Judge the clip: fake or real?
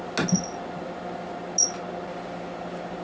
real